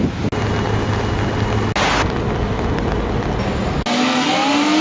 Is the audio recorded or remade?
recorded